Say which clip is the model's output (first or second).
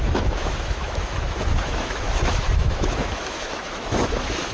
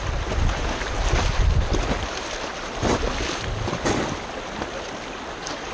first